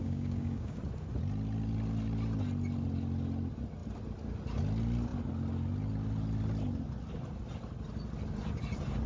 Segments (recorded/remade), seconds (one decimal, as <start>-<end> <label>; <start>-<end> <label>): 0.0-0.8 remade; 0.8-9.1 recorded